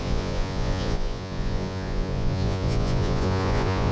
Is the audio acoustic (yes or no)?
no